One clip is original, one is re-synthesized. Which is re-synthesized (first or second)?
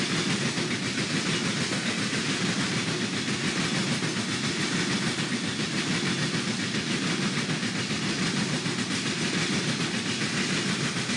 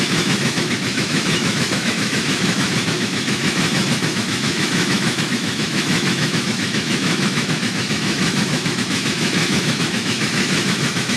second